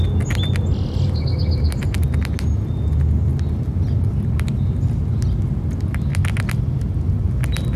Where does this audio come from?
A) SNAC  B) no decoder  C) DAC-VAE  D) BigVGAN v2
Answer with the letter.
B